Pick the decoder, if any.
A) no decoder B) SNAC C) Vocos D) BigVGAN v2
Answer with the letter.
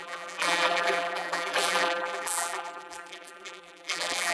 D